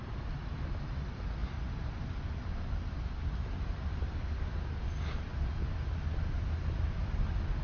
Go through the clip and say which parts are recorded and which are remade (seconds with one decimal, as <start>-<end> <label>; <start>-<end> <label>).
0.0-7.6 recorded